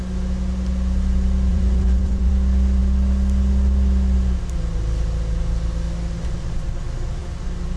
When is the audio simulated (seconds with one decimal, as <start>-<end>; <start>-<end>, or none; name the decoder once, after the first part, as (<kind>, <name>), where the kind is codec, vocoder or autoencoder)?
1.5-2.3 (vocoder, Vocos)